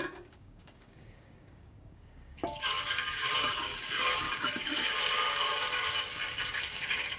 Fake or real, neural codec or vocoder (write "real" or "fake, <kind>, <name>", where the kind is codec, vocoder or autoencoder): fake, codec, DAC